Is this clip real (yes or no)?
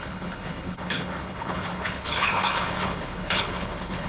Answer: no